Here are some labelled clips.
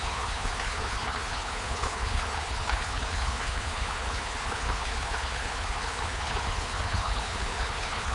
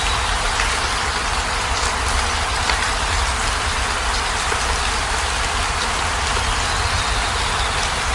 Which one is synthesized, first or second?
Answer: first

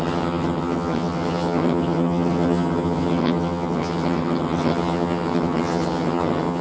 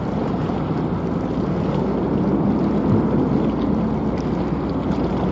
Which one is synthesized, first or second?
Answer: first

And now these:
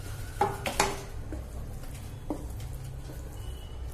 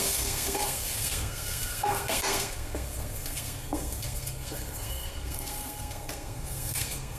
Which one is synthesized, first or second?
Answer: second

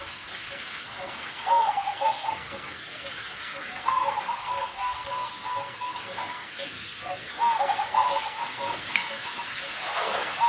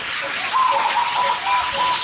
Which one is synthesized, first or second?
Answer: first